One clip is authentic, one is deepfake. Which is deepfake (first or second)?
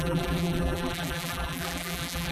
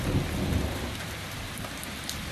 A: first